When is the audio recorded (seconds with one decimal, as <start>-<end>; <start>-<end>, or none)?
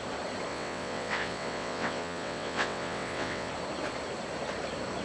0.0-0.5; 3.5-5.0